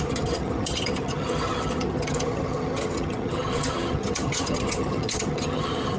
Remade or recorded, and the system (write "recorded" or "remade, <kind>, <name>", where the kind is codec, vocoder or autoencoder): remade, vocoder, HiFi-GAN